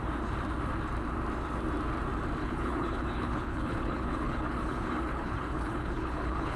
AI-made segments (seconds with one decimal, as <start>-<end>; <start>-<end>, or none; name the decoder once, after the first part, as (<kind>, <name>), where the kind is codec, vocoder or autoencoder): 2.4-6.6 (codec, HILCodec)